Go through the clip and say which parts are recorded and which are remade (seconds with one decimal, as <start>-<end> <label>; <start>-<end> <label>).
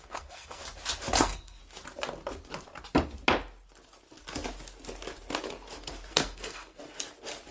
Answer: 0.0-0.6 remade; 0.6-1.2 recorded; 1.2-1.6 remade; 1.6-6.1 recorded; 6.1-6.8 remade; 6.8-7.5 recorded